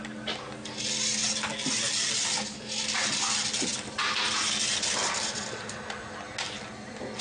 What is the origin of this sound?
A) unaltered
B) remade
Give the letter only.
A